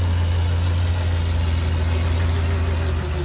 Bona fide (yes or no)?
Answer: yes